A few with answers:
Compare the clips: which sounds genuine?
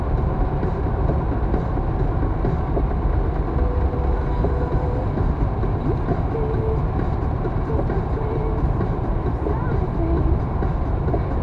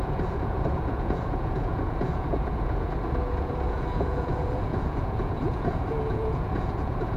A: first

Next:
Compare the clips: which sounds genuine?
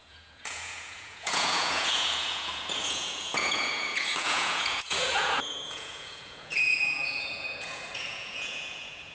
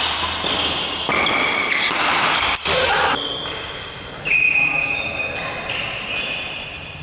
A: second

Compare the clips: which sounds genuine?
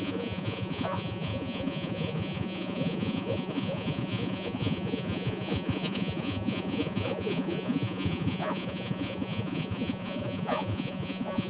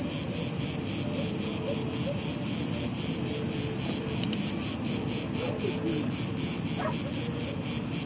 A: second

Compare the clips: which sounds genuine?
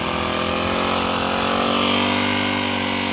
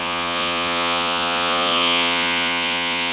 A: first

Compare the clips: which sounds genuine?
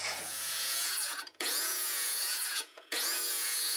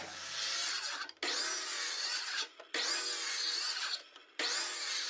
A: second